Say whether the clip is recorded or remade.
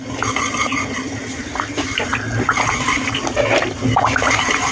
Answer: recorded